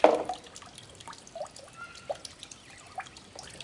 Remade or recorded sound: recorded